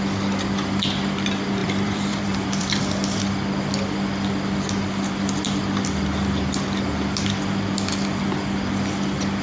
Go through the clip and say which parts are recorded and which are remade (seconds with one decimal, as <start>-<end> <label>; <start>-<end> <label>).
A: 0.0-1.6 recorded; 1.6-2.8 remade; 2.8-9.4 recorded

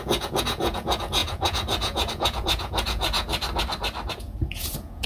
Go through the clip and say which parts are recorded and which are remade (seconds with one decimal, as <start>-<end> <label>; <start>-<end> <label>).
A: 0.0-3.3 remade; 3.3-4.1 recorded; 4.1-5.1 remade

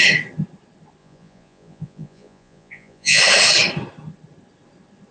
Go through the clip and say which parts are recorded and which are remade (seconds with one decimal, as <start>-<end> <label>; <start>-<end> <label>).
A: 0.0-1.0 recorded; 1.0-3.2 remade; 3.2-5.1 recorded